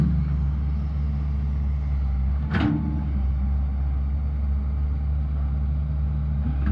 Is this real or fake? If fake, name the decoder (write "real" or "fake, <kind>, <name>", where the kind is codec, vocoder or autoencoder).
real